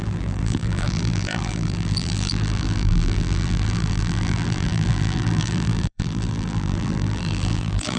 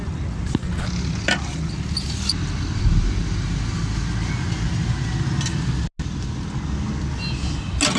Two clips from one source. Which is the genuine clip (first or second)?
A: second